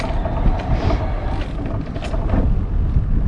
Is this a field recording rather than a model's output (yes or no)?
yes